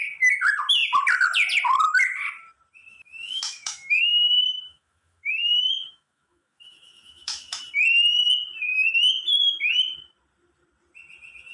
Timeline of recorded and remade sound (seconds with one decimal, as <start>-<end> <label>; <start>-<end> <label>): 0.0-2.9 recorded; 2.9-7.6 remade; 7.6-11.5 recorded